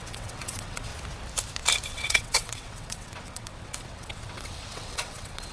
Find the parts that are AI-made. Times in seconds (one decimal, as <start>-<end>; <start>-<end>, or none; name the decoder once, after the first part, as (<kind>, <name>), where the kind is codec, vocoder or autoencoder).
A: 0.0-0.9 (vocoder, WaveNeXt); 1.9-5.5